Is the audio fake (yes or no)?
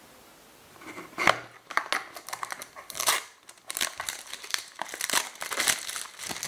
no